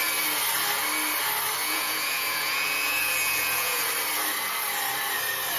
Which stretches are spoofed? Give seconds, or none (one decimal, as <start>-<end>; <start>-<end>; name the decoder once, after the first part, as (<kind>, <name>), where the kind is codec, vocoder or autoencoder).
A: 1.6-3.9 (vocoder, Vocos)